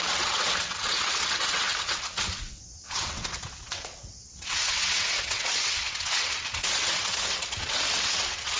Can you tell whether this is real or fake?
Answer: fake